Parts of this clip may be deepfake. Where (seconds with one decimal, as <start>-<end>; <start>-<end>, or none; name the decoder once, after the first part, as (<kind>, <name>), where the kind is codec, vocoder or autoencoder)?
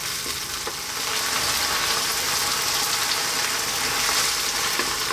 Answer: none